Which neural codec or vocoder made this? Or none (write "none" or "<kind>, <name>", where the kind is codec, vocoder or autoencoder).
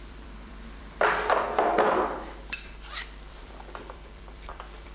vocoder, BigVGAN v2